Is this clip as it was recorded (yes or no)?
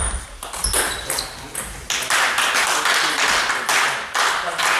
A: yes